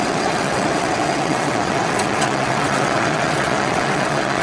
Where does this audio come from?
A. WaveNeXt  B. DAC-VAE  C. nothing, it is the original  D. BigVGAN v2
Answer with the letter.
A